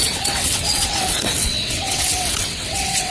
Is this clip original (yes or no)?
no